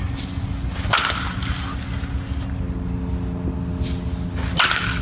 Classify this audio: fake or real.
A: real